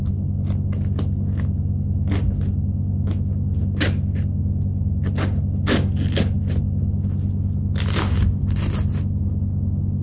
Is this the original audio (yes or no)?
yes